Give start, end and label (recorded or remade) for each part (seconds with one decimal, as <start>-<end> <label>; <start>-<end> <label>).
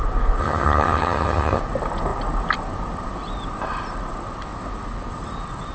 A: 0.0-0.4 recorded; 0.4-1.6 remade; 1.6-5.7 recorded